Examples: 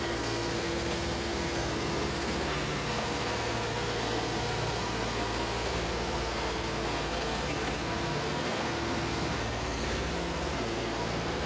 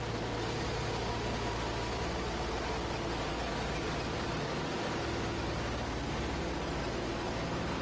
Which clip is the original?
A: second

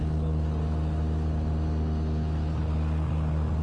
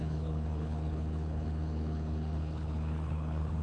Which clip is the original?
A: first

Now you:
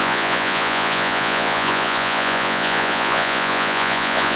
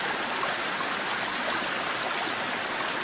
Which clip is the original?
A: second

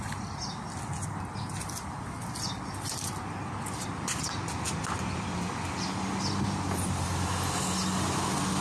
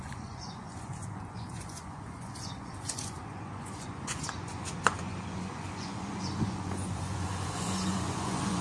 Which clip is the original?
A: first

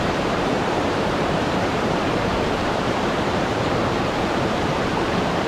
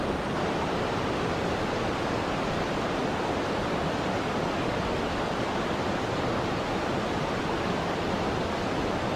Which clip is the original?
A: second